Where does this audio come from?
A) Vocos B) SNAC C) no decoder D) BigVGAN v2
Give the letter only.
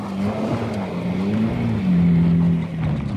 C